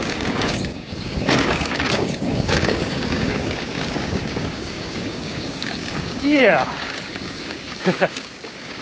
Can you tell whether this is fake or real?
fake